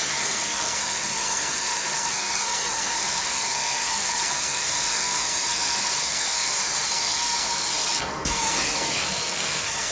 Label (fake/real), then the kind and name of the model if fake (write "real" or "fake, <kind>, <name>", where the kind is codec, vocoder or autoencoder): fake, codec, SNAC